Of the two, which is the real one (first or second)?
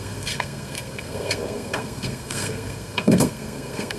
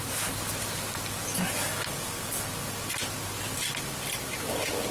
second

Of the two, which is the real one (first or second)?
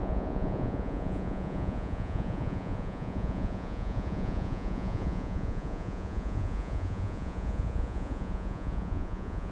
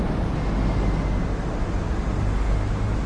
second